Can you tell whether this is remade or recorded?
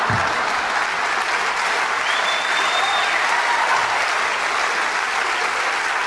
recorded